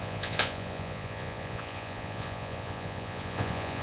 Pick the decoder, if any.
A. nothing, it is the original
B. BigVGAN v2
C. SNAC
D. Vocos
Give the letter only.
D